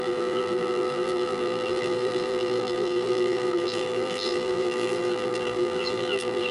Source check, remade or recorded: remade